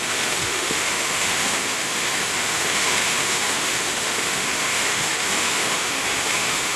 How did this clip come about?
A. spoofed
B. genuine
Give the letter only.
A